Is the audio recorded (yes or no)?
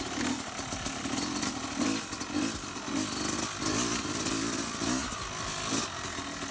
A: yes